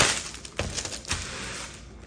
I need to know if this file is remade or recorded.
recorded